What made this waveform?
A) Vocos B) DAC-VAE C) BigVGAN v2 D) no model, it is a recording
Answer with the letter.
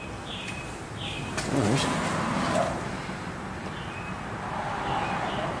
D